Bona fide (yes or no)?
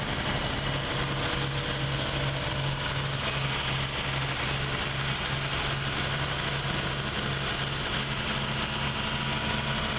yes